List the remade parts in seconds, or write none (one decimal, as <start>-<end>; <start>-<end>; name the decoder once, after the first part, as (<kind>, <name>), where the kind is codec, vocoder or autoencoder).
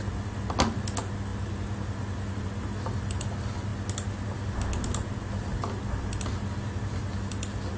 none